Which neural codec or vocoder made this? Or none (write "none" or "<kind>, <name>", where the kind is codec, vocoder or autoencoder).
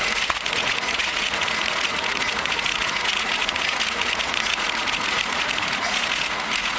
vocoder, Vocos